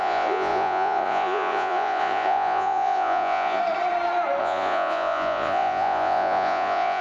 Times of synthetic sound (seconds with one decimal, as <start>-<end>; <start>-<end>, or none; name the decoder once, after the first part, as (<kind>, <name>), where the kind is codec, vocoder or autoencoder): 0.0-3.6 (vocoder, Vocos); 4.4-7.0